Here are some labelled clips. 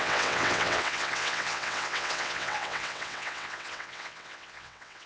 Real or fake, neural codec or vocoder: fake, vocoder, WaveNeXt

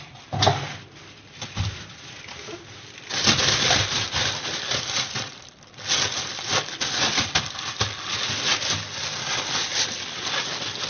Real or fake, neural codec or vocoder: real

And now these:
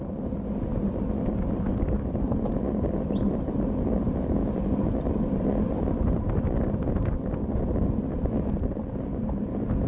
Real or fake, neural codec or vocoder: real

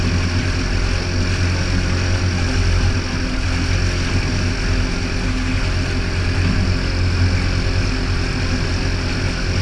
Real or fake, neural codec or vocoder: real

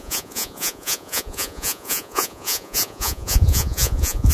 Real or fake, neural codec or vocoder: fake, vocoder, Vocos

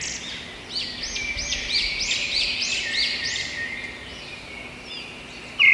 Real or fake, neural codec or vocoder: real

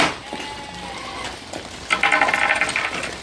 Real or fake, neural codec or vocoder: real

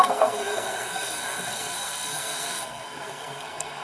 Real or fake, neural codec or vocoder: fake, codec, SNAC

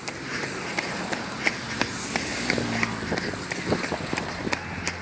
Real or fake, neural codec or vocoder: real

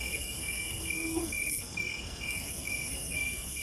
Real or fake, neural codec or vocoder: fake, codec, SNAC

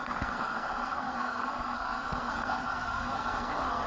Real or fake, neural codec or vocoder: fake, codec, SNAC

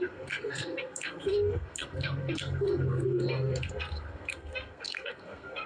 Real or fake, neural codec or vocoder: fake, codec, SNAC